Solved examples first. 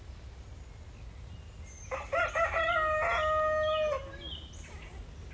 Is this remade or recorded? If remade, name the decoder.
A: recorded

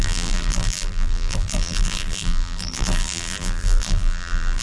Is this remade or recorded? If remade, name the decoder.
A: remade, vocoder, BigVGAN v2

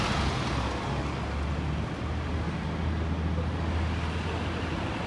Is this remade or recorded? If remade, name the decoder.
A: recorded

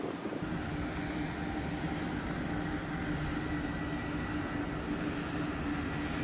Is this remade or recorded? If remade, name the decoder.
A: recorded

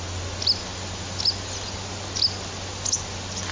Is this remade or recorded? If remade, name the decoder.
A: recorded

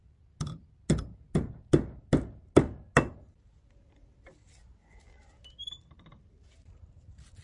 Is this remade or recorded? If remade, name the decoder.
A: recorded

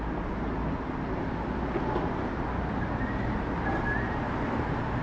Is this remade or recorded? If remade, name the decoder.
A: recorded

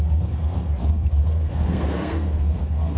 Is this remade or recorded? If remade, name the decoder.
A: remade, codec, SNAC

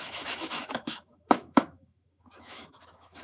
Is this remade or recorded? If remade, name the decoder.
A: remade, autoencoder, DAC-VAE